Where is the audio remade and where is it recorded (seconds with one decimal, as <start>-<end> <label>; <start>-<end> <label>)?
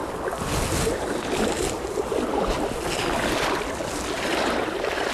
0.0-5.1 recorded